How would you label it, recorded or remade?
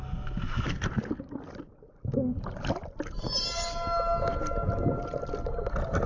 recorded